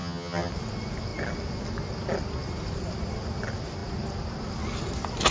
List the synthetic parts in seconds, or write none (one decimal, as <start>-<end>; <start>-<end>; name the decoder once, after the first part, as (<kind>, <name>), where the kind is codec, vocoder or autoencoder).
0.0-0.5 (vocoder, HiFi-GAN)